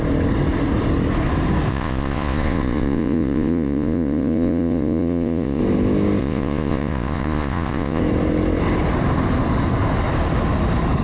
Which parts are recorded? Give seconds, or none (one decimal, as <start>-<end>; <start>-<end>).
0.0-1.7; 5.6-6.2; 8.0-11.0